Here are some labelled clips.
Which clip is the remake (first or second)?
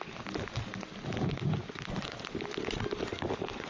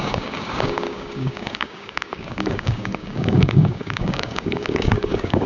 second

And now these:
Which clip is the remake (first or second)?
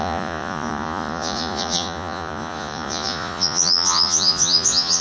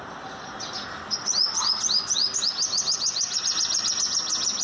first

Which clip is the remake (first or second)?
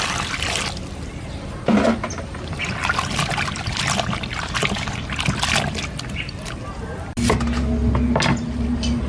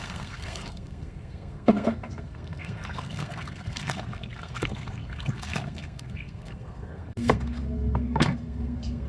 second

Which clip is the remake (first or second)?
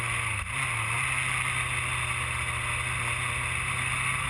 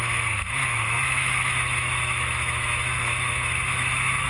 second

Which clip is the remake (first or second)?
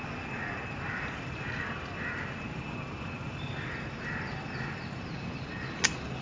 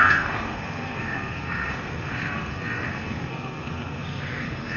second